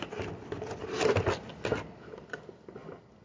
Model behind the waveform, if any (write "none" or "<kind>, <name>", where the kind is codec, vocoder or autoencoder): none